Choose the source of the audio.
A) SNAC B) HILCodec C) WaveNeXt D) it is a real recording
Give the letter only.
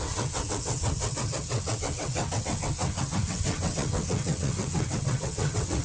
C